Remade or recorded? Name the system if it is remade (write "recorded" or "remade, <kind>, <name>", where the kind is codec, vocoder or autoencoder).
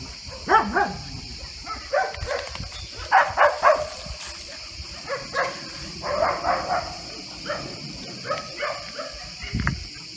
remade, vocoder, BigVGAN v2